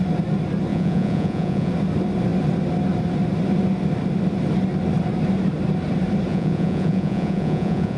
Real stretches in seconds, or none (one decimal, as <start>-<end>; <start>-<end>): 0.0-0.7; 1.7-6.3